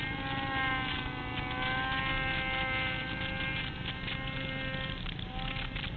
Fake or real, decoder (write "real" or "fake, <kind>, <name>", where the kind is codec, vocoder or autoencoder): real